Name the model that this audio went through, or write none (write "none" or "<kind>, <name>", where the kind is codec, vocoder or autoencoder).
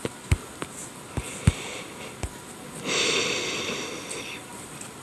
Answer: none